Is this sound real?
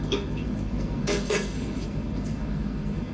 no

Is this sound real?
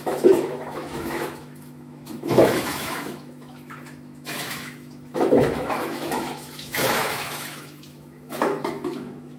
no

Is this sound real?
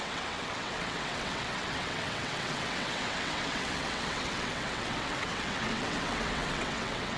no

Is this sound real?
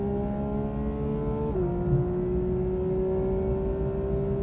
yes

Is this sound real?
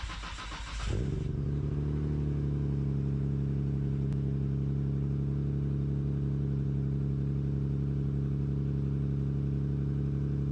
yes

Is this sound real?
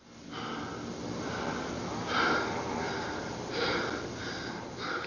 yes